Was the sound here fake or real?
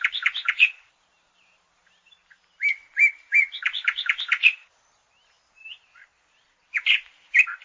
fake